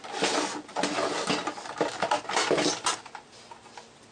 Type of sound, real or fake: real